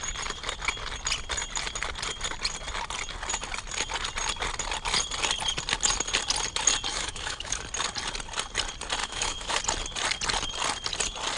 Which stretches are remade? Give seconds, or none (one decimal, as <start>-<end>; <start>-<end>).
6.9-7.6; 9.0-9.6